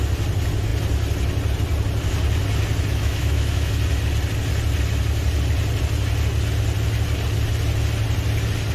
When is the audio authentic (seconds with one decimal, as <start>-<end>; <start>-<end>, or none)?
0.0-2.9; 3.7-8.7